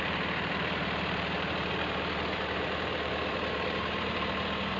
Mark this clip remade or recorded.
remade